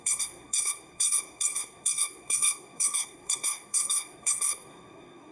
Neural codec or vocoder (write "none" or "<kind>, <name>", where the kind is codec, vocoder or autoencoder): codec, SNAC